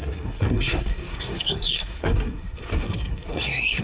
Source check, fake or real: fake